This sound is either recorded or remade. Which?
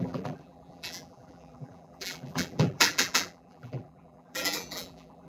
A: remade